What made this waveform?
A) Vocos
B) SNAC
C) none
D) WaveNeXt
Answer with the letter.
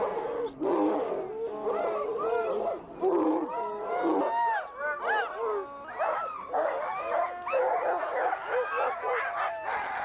C